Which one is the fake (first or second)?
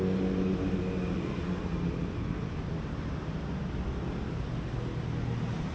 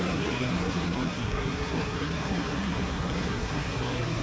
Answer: second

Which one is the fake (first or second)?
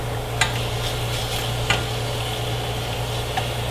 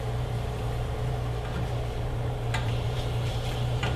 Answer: second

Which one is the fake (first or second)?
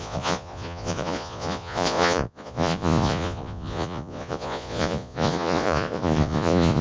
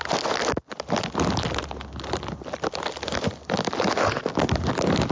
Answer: first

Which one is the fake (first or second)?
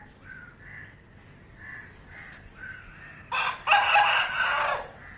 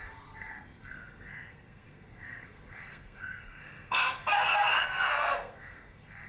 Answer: second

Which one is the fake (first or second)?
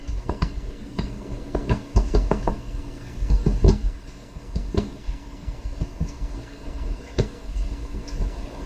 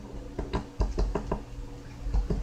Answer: first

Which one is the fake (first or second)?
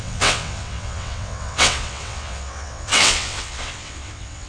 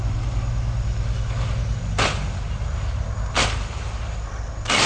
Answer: first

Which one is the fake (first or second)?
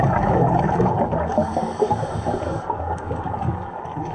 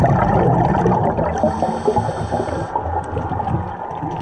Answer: first